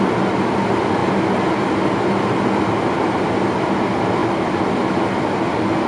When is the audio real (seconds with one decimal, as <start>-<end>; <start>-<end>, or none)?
0.0-5.9